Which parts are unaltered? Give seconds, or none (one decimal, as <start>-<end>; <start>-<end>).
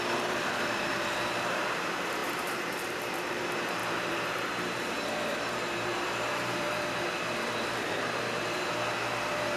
none